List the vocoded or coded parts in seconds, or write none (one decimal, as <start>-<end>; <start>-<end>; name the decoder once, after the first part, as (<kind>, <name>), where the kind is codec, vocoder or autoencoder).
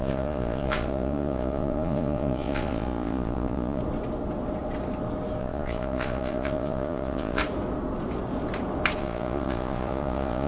0.0-3.8 (vocoder, Vocos); 5.4-7.4; 9.0-10.5